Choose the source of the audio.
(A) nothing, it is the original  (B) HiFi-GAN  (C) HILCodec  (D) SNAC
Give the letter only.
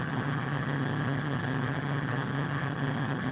B